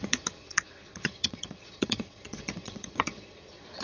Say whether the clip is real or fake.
fake